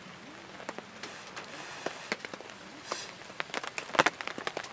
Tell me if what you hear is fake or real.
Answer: real